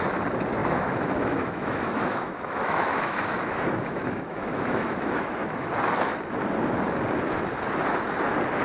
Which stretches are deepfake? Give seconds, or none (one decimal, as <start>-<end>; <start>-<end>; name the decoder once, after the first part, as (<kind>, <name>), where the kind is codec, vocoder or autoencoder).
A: 0.6-5.7 (autoencoder, DAC-VAE)